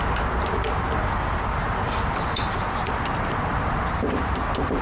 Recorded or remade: recorded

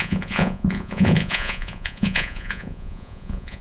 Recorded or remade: remade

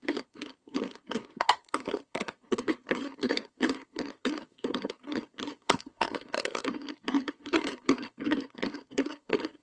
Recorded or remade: remade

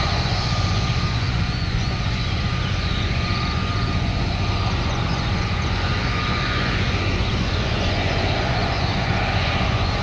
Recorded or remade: remade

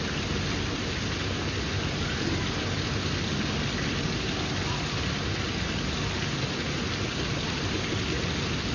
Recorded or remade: recorded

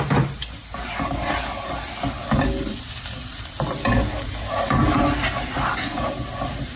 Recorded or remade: recorded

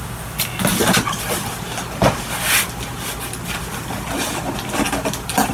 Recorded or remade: recorded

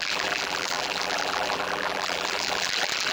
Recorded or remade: remade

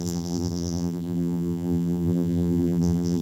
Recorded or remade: remade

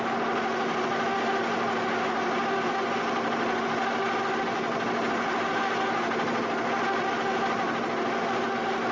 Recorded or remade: recorded